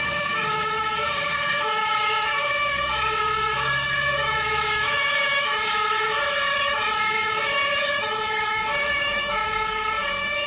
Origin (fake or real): fake